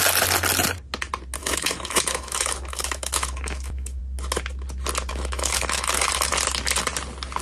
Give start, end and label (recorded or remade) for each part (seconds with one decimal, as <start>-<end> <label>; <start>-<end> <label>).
0.0-1.4 recorded; 1.4-4.0 remade; 4.0-5.1 recorded; 5.1-6.3 remade; 6.3-7.4 recorded